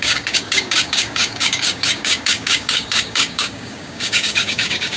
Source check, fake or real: fake